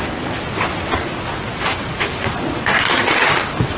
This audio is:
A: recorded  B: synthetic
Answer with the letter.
A